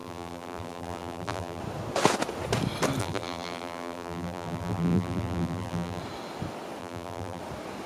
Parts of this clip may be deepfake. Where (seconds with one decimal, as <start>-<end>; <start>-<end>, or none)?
0.0-1.6; 3.0-6.0; 6.8-7.4